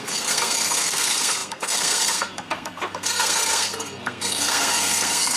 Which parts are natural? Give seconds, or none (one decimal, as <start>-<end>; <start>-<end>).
none